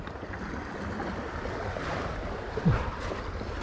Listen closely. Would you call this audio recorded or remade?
recorded